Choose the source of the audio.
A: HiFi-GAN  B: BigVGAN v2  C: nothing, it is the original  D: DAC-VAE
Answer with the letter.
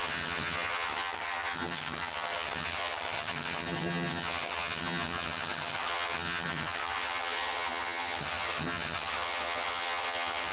A